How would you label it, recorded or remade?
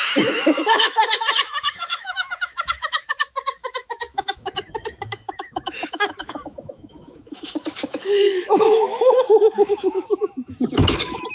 remade